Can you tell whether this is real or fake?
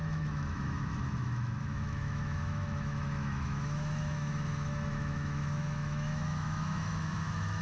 fake